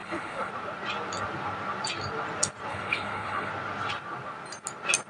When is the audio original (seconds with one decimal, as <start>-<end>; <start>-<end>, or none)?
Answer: 0.5-2.7; 3.5-5.1